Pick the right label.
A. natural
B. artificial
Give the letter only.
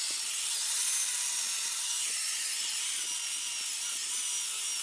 A